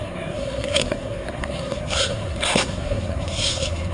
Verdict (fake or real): fake